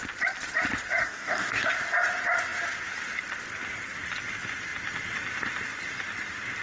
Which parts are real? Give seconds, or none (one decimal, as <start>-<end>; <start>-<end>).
0.0-1.0; 1.7-6.6